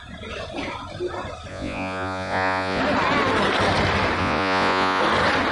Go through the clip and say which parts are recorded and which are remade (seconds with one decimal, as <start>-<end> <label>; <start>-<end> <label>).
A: 0.0-1.5 recorded; 1.5-2.8 remade; 2.8-4.2 recorded; 4.2-5.0 remade; 5.0-5.5 recorded

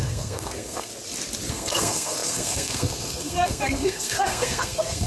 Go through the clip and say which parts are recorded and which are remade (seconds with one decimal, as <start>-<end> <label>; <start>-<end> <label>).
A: 0.0-0.9 remade; 0.9-1.5 recorded; 1.5-5.1 remade